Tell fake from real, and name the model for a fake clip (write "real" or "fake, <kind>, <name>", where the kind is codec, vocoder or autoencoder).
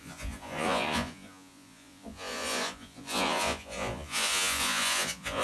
fake, vocoder, Vocos